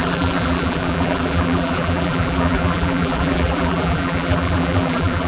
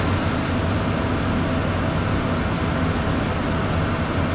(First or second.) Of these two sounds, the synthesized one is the first